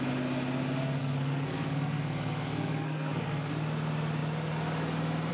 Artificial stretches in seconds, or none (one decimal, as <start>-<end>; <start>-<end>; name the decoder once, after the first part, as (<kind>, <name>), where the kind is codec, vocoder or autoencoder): 1.0-3.5 (codec, SNAC)

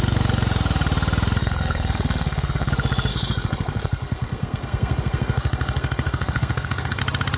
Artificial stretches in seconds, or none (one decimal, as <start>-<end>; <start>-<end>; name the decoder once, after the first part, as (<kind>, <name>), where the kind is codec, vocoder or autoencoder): 1.4-2.7 (codec, SNAC); 3.1-7.0

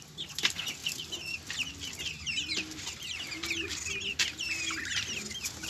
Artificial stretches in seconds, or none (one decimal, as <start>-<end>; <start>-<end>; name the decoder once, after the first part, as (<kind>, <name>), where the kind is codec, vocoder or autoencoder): none